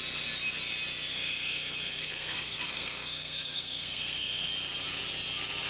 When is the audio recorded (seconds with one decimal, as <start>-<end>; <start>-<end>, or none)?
0.0-1.1; 4.5-5.7